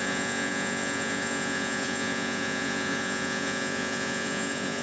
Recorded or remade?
remade